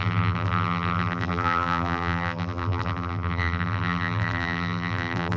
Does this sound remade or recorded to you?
remade